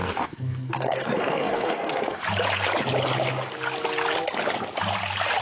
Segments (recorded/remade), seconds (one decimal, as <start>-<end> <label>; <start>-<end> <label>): 0.0-2.2 remade; 2.2-5.4 recorded